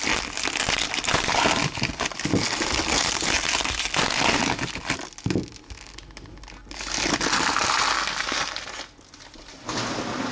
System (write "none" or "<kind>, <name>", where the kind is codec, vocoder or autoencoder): none